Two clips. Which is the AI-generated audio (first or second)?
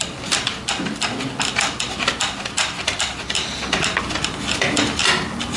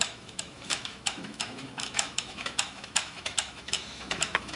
second